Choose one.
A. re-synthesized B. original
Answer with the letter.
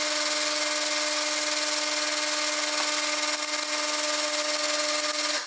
B